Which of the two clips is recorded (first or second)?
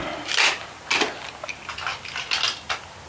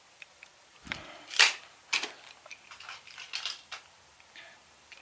first